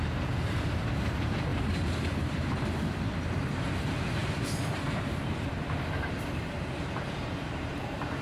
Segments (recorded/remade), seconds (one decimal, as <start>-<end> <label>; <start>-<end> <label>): 0.0-4.2 remade; 4.2-6.3 recorded; 6.3-8.2 remade